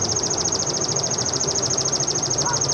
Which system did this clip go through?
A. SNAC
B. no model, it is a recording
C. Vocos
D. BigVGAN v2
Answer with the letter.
D